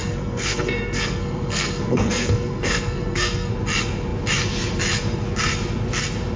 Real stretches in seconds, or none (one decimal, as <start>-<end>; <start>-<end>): 3.5-6.4